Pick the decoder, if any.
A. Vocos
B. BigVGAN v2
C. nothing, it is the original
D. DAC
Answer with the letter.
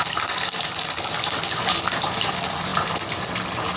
C